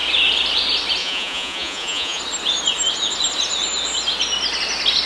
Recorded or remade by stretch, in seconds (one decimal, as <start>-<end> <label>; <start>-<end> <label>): 0.0-1.0 recorded; 1.0-2.2 remade; 2.2-5.1 recorded